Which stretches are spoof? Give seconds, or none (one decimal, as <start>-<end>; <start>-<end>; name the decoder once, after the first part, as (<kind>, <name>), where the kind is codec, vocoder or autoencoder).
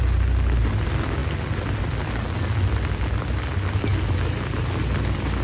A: none